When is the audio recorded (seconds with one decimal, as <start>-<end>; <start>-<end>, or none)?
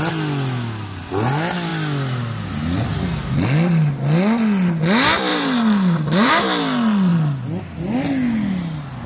0.0-5.3; 6.3-9.1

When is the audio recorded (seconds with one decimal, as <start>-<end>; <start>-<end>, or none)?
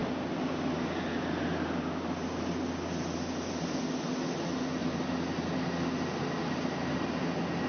0.0-7.7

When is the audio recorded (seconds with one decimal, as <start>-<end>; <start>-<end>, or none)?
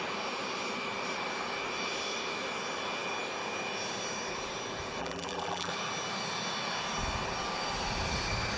0.0-5.0; 5.7-8.6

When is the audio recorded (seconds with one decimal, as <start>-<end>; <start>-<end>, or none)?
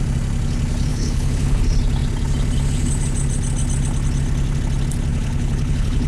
0.0-0.9; 1.6-5.1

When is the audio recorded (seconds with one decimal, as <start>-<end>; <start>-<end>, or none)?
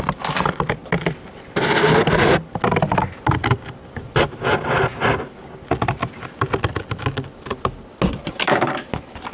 0.0-9.3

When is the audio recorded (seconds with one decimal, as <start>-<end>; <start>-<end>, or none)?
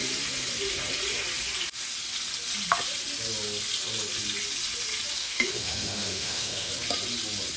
0.0-5.2; 6.7-7.6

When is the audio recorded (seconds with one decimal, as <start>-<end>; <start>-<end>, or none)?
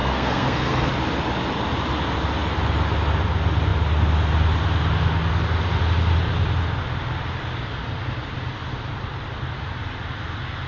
0.9-10.7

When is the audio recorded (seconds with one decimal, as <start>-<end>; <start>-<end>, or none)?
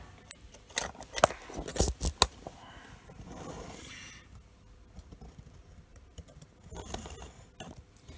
0.0-5.9; 6.5-8.2